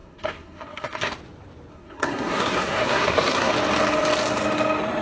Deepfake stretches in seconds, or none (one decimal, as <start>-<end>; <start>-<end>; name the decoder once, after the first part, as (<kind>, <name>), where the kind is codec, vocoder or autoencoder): 0.0-1.1 (codec, SNAC); 1.7-3.5